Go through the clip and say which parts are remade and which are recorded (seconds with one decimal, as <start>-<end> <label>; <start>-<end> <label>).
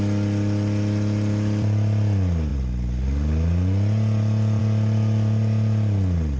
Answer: 0.0-6.4 recorded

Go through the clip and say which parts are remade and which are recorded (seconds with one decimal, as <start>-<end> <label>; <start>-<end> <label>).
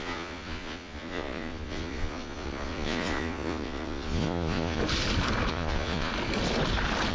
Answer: 0.0-4.8 remade; 4.8-5.5 recorded; 5.5-6.1 remade; 6.1-7.1 recorded